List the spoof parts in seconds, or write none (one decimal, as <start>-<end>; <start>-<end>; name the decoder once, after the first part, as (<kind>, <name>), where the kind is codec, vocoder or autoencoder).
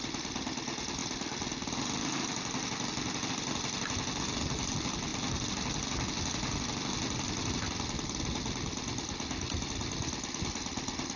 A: none